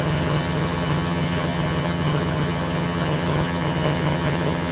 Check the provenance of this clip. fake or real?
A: fake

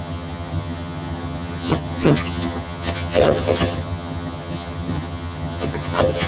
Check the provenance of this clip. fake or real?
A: fake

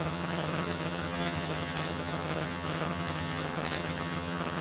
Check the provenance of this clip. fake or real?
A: fake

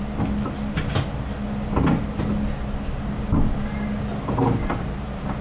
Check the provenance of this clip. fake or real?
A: real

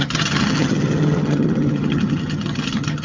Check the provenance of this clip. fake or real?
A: fake